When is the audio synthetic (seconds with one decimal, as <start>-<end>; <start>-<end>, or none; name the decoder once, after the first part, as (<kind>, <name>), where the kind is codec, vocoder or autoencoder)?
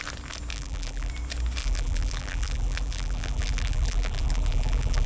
0.5-1.1 (vocoder, BigVGAN v2); 1.6-5.1